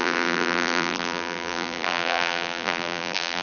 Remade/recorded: remade